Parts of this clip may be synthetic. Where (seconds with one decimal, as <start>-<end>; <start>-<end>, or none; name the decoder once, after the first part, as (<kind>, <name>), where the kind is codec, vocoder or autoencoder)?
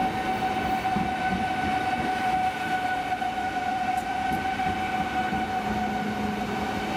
none